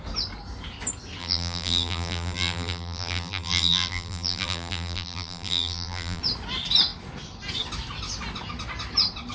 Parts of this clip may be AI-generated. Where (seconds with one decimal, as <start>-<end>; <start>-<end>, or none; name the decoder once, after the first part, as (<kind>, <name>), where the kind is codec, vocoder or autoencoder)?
1.2-6.2 (vocoder, BigVGAN v2)